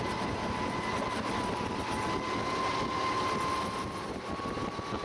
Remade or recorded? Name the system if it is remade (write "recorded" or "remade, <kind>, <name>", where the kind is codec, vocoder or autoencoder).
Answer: recorded